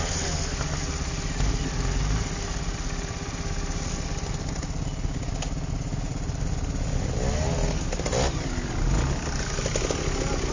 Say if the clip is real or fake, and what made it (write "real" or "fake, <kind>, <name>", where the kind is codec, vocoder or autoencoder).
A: real